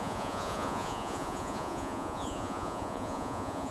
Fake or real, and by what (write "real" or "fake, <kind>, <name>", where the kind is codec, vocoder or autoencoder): fake, vocoder, Vocos